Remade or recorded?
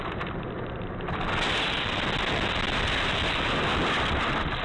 recorded